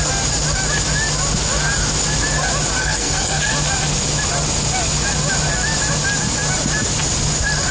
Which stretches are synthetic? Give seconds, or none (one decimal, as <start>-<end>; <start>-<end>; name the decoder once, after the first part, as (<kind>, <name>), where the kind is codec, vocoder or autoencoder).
2.8-3.4 (codec, SNAC)

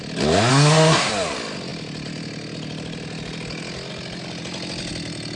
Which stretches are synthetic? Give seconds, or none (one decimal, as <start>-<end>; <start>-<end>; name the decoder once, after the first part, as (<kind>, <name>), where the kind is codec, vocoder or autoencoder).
0.5-1.1 (codec, SNAC)